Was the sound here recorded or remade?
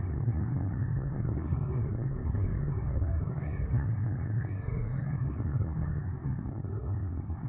remade